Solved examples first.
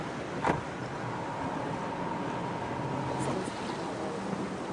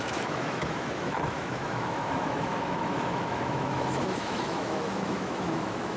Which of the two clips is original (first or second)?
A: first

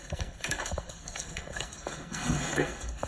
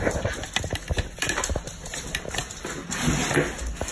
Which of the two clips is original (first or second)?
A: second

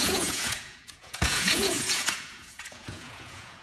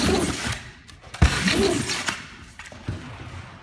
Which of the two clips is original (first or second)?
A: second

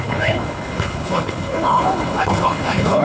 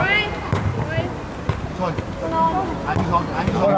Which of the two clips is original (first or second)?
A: second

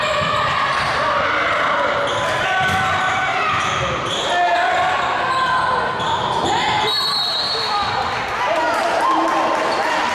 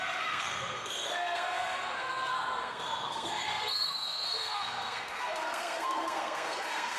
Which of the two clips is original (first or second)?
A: first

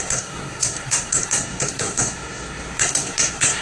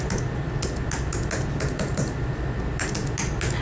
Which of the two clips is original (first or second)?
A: second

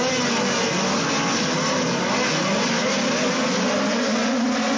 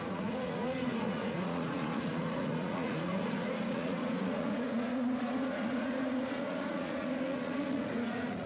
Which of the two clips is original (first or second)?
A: first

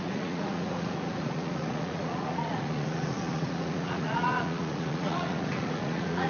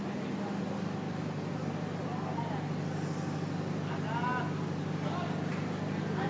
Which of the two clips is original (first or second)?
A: second